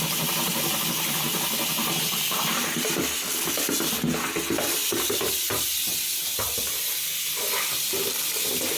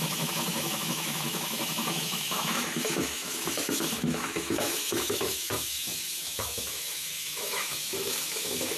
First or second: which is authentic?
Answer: first